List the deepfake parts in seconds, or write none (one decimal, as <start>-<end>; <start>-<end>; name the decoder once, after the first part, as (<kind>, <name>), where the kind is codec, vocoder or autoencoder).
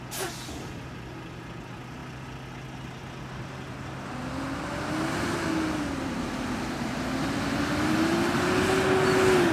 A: none